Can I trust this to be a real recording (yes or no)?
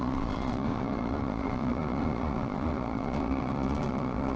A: no